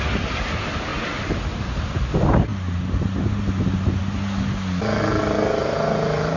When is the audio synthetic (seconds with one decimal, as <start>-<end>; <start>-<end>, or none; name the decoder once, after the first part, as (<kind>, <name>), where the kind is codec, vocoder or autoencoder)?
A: 0.9-1.6 (vocoder, BigVGAN v2)